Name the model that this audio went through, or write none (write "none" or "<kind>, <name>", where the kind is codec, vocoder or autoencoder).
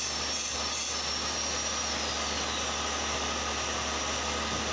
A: none